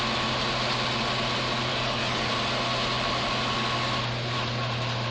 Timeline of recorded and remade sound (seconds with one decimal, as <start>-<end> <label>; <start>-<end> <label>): 0.0-1.7 recorded; 1.7-2.3 remade; 2.3-5.1 recorded

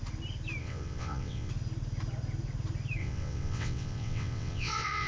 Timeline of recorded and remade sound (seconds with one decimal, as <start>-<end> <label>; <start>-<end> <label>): 0.0-0.6 recorded; 0.6-1.5 remade; 1.5-3.0 recorded; 3.0-5.1 remade

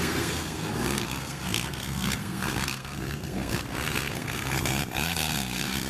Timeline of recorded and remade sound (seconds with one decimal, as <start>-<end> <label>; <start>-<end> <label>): 0.0-5.9 remade

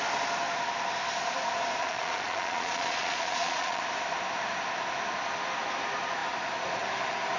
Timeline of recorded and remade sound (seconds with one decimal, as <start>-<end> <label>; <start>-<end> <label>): 0.0-1.8 recorded; 1.8-3.8 remade; 3.8-7.4 recorded